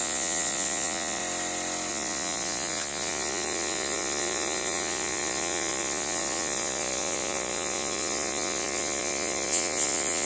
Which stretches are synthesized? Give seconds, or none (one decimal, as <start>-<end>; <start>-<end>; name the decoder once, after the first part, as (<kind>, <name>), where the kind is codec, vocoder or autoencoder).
0.0-1.2 (vocoder, Vocos); 1.9-10.2